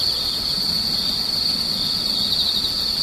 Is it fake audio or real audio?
real